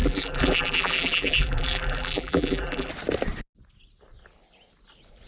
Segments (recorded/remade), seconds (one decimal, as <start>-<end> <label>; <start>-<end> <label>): 0.0-2.9 remade; 2.9-5.3 recorded